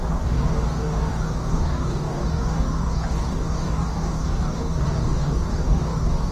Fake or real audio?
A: fake